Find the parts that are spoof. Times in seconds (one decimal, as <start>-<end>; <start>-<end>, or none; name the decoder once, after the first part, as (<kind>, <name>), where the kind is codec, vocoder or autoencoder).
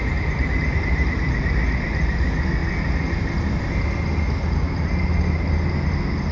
none